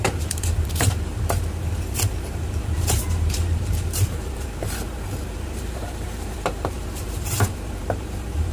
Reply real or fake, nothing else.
fake